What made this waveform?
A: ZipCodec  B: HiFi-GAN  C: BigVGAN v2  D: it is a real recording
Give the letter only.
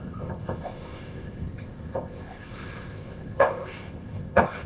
A